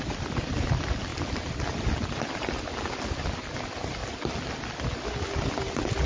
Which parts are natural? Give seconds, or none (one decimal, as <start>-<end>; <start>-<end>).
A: 0.0-6.1